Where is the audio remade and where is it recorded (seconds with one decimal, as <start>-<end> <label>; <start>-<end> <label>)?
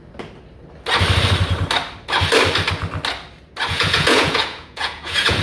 0.0-3.7 recorded; 3.7-5.4 remade